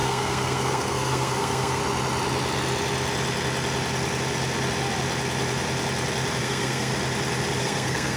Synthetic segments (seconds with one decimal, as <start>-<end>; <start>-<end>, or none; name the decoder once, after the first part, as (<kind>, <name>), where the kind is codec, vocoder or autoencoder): 0.0-1.8 (codec, SNAC); 6.4-6.9; 7.6-8.2